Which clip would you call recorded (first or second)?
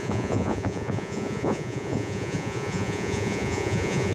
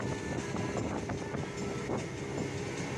second